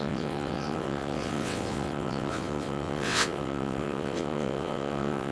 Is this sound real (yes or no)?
no